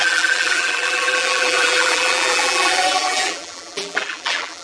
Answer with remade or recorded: remade